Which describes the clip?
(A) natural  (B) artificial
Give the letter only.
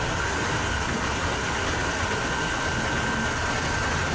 A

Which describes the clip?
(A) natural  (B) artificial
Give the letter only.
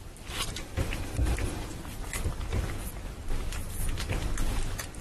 A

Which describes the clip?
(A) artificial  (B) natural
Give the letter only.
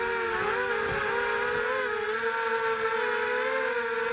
B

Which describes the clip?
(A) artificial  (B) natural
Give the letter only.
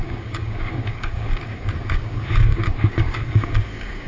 A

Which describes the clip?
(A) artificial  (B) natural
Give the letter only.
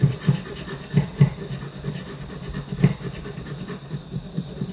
B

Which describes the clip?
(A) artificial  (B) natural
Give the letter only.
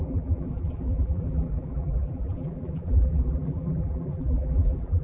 A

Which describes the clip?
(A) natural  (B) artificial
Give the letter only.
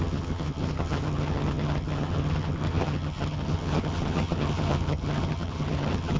B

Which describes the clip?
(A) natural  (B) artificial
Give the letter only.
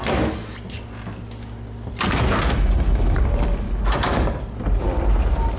A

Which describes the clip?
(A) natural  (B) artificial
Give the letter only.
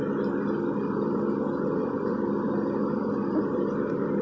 A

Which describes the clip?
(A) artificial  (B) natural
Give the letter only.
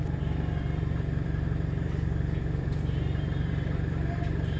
A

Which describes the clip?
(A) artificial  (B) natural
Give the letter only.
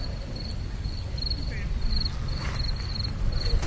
B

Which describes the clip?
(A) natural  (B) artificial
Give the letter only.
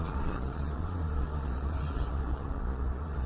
B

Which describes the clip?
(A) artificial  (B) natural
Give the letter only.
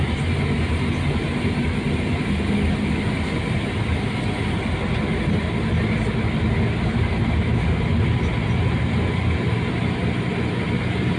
B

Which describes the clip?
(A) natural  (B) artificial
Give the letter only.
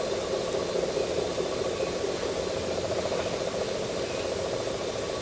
A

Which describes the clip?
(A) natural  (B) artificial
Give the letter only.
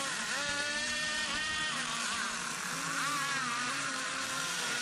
B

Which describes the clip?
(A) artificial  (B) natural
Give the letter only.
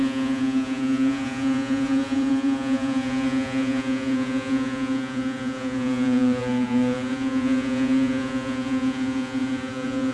A